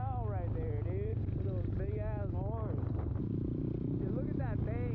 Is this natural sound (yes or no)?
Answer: yes